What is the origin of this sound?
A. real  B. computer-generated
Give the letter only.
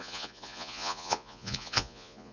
B